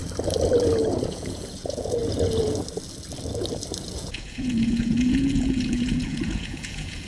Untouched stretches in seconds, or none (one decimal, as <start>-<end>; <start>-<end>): 0.0-1.1; 2.0-3.8

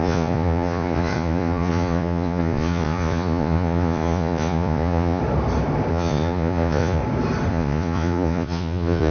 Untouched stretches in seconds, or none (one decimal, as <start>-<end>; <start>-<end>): 5.2-5.9; 7.0-7.5

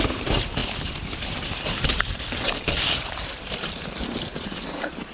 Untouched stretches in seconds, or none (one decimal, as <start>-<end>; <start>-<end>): none

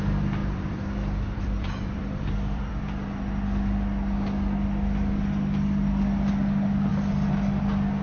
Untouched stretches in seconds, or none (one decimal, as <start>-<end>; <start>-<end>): 0.0-0.4; 2.8-8.0

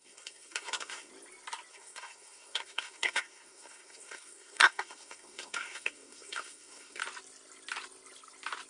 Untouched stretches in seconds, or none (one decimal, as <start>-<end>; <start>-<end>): 1.1-1.7; 7.0-8.7